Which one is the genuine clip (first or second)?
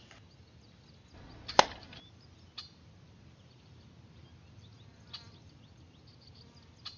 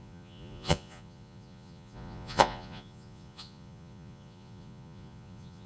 first